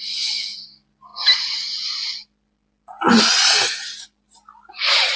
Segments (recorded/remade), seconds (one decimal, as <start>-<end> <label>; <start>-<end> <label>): 0.0-5.2 recorded